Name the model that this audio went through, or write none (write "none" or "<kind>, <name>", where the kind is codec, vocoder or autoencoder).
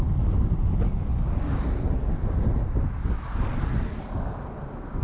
none